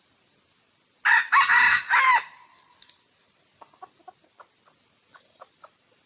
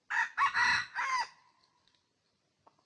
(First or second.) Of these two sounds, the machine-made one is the first